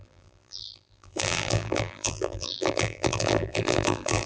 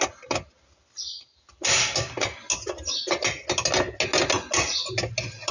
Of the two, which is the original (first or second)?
second